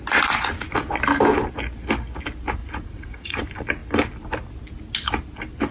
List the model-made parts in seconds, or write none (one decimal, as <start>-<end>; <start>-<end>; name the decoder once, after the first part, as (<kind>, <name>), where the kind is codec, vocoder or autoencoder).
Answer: 2.6-3.4 (vocoder, Vocos)